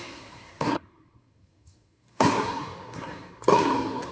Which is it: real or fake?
fake